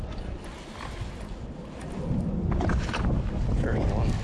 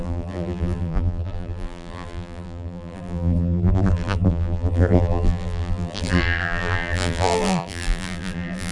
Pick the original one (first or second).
first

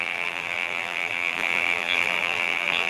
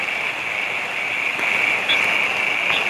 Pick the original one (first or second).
second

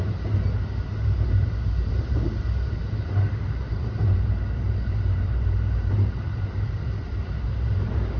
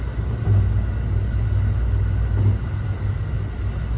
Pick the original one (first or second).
second